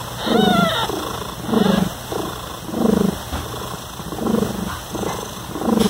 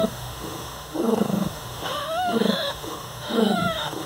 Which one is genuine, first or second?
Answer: first